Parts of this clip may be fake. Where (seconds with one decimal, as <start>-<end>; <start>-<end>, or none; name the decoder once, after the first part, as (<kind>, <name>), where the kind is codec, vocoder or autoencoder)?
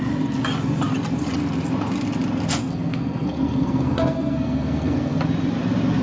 2.6-5.2 (codec, SNAC)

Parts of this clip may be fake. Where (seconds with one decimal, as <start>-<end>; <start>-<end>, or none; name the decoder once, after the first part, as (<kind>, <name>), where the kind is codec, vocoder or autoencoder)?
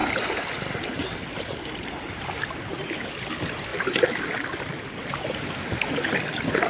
none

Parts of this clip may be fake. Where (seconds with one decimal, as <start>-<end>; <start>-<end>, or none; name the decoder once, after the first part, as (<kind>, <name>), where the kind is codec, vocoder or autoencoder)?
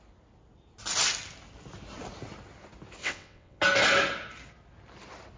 3.0-3.6 (vocoder, WaveNeXt)